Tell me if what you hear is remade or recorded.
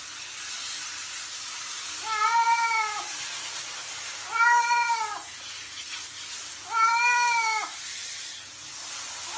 recorded